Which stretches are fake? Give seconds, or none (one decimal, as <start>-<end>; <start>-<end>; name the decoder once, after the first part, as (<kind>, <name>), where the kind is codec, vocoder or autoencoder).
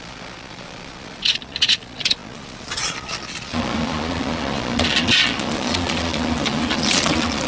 0.0-7.5 (vocoder, Vocos)